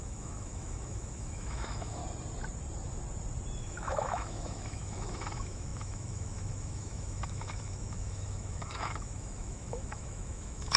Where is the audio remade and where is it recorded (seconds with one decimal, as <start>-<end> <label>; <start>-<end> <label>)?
0.0-2.0 remade; 2.0-3.6 recorded; 3.6-10.8 remade